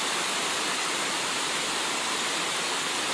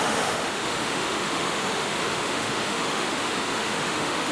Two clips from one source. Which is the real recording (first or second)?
first